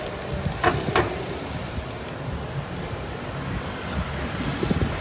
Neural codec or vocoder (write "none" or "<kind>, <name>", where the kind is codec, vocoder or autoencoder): none